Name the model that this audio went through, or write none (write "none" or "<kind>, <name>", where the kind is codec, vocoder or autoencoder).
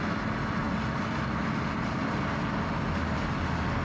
none